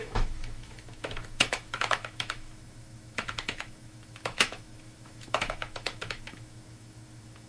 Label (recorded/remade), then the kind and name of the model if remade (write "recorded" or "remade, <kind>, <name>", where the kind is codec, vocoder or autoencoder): remade, autoencoder, DAC-VAE